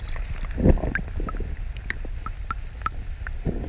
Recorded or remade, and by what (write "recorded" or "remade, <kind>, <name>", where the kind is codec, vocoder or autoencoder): recorded